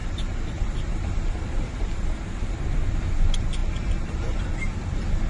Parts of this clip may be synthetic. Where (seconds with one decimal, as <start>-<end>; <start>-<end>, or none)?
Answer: 0.0-2.2